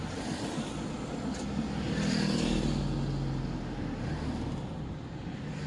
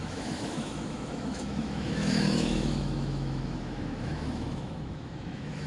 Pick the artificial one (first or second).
second